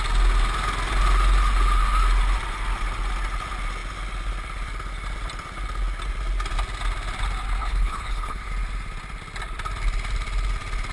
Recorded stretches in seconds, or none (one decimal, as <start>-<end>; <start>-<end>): 0.0-7.6; 8.5-10.9